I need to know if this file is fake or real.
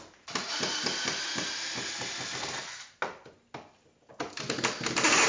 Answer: real